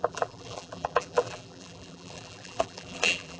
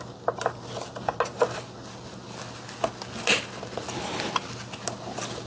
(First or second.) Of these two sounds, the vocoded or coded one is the first